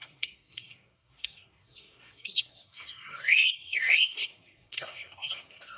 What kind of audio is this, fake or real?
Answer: fake